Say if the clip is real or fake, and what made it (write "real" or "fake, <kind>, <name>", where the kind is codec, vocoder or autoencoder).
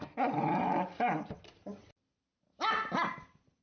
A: real